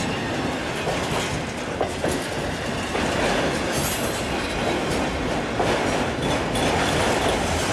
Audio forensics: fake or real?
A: real